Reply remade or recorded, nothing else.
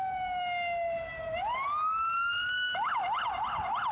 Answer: recorded